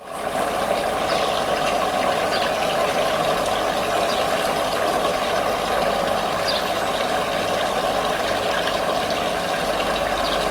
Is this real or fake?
real